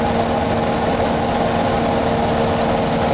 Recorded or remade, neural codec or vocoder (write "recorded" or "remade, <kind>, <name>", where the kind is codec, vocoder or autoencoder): recorded